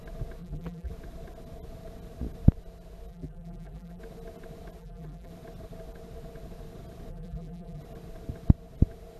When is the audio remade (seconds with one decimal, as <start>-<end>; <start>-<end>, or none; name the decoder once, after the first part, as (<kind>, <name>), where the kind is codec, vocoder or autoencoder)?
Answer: 0.4-0.9 (vocoder, BigVGAN v2); 3.1-4.0; 4.8-5.3; 7.1-7.8